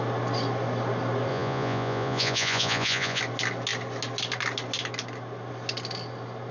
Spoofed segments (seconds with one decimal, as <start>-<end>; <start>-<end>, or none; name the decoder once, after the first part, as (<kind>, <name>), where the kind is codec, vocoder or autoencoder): 1.3-3.2 (vocoder, Vocos)